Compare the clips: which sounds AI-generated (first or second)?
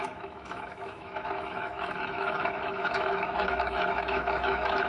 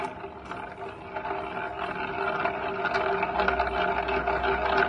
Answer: first